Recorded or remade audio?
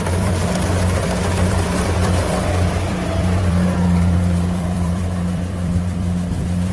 remade